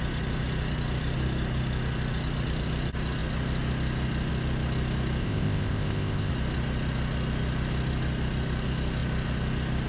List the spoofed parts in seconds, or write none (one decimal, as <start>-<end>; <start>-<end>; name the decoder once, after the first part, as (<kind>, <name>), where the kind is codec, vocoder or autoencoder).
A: 5.2-6.3 (codec, ZipCodec)